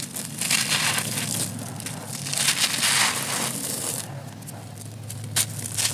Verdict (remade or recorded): recorded